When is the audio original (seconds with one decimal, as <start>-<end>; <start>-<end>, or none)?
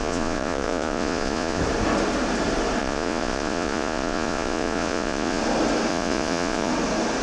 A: 1.6-2.8; 5.4-5.9; 6.7-7.2